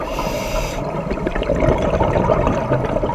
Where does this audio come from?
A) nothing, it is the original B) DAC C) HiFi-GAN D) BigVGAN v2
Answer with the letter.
D